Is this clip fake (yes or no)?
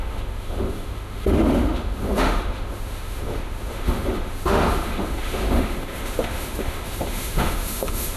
yes